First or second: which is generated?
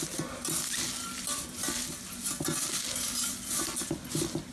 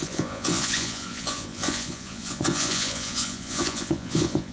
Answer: second